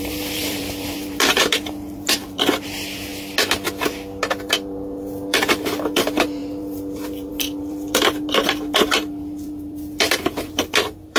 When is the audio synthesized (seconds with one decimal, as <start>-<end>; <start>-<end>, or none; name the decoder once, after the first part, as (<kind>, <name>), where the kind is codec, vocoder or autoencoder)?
0.0-3.1 (vocoder, BigVGAN v2); 4.3-11.2